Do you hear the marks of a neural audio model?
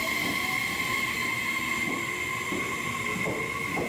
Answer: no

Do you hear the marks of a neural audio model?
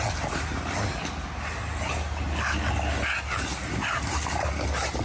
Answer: no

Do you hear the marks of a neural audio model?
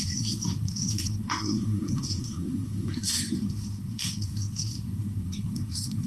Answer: yes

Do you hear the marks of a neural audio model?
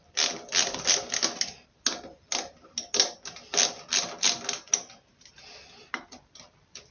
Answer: no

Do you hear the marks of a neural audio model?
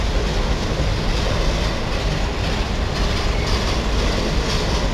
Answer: no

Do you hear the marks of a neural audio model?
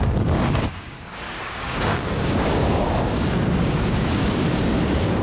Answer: yes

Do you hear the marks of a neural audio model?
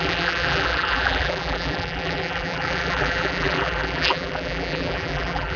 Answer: yes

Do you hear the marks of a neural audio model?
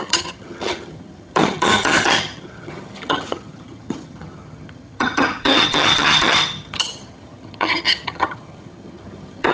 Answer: yes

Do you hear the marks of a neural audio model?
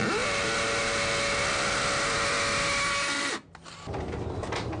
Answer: no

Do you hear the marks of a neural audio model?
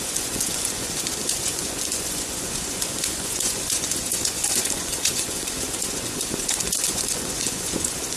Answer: yes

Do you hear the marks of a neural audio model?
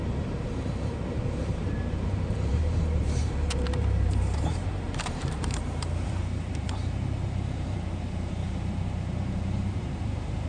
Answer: yes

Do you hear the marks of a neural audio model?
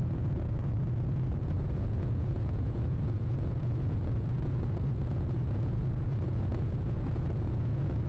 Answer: yes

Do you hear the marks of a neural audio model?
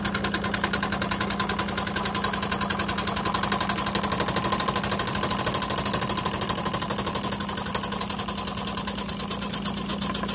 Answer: no